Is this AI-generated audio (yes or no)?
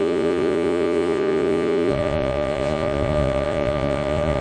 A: yes